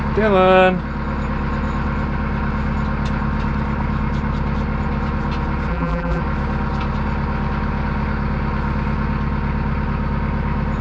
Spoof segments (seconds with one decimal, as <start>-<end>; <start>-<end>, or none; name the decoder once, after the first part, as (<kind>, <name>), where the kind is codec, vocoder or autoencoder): 5.7-6.2 (vocoder, BigVGAN v2)